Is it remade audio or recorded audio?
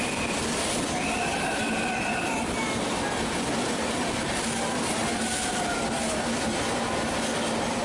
recorded